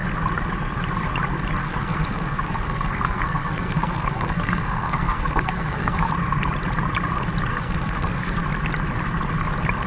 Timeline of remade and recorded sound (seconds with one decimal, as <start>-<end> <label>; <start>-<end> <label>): 0.0-1.6 recorded; 1.6-6.1 remade; 6.1-7.5 recorded; 7.5-8.4 remade; 8.4-9.9 recorded